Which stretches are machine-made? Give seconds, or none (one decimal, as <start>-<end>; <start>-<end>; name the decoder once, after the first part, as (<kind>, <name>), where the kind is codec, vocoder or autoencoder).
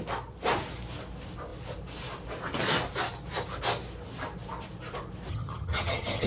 5.3-6.3 (vocoder, HiFi-GAN)